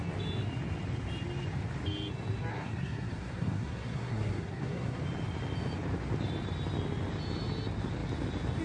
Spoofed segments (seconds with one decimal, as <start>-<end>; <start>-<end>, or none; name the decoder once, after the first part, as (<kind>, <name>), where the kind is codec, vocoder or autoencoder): 2.5-5.0 (codec, SNAC)